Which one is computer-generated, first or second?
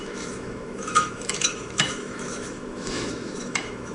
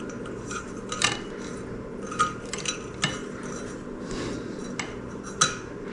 first